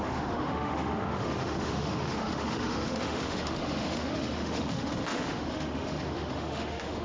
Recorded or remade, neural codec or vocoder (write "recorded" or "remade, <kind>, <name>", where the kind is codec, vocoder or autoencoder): remade, autoencoder, DAC-VAE